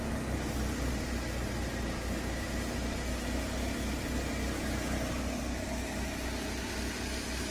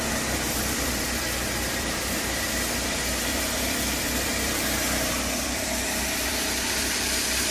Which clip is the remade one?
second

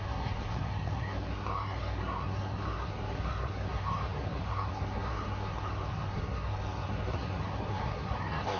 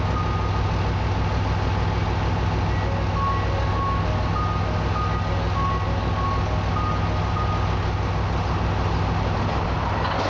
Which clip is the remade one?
first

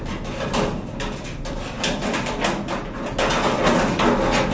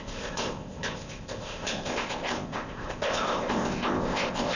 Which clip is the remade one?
second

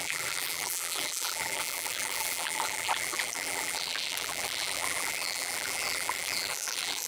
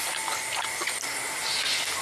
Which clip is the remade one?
first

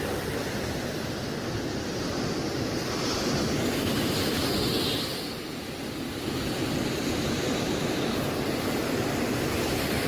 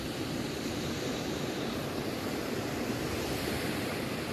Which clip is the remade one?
second